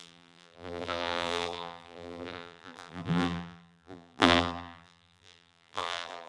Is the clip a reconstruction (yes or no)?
yes